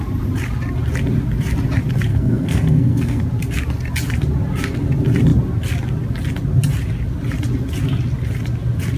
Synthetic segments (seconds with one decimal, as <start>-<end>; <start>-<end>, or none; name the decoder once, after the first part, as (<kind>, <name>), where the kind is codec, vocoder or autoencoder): 2.1-3.2 (codec, SNAC)